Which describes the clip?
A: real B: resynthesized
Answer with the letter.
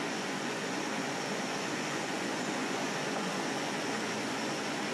B